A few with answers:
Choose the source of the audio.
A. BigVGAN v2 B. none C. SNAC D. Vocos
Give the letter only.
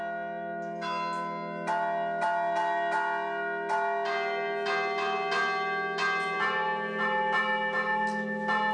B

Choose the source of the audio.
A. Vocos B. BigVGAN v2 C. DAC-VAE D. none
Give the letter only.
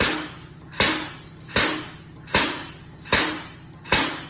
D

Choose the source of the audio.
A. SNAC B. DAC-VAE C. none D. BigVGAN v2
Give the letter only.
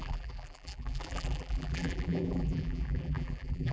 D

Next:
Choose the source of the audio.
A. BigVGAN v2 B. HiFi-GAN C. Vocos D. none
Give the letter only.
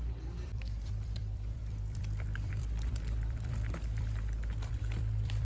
A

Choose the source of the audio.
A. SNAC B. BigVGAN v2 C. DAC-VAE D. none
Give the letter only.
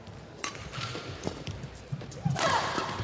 B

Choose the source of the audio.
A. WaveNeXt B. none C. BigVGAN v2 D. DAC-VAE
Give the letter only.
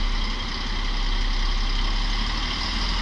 B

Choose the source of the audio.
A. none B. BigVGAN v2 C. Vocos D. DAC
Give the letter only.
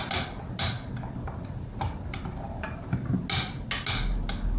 A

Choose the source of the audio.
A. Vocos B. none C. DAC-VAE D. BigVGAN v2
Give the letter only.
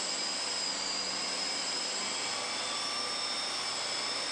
B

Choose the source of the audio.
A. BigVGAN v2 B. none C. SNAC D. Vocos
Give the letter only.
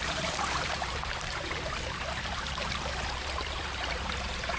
A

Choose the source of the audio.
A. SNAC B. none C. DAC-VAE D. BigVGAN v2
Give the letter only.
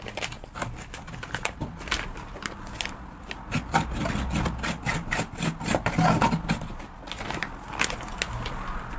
B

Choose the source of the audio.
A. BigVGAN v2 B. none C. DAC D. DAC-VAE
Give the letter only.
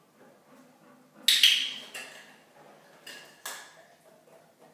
B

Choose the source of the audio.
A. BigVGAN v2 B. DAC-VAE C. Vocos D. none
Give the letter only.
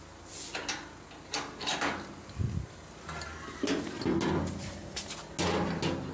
D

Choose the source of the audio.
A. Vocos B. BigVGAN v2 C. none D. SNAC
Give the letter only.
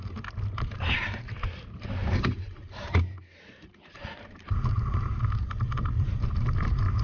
B